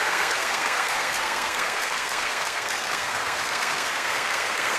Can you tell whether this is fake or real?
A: fake